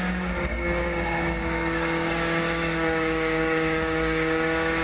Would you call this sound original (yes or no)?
no